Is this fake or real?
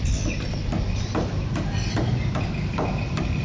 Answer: real